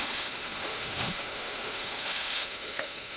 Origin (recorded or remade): remade